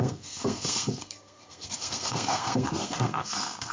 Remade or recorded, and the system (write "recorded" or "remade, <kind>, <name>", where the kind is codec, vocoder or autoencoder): remade, codec, SNAC